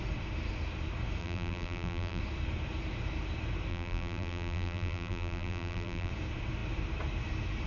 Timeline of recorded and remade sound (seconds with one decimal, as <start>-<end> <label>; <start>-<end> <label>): 0.0-1.2 recorded; 1.2-2.2 remade; 2.2-3.7 recorded; 3.7-6.1 remade; 6.1-7.7 recorded